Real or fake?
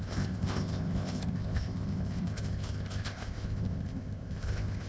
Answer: fake